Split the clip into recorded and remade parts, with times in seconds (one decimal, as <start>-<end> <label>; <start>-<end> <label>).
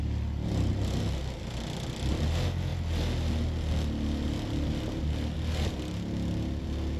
0.0-7.0 recorded